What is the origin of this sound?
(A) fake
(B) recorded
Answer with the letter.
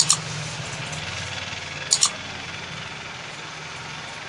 B